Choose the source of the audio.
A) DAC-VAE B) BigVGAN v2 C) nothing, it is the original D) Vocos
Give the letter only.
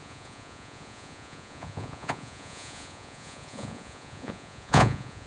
D